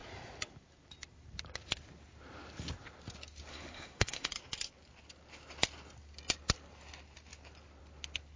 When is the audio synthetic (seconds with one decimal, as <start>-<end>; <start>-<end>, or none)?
3.5-4.3